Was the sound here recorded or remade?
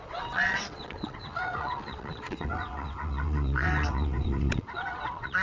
remade